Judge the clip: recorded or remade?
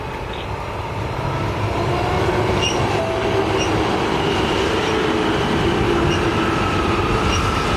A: recorded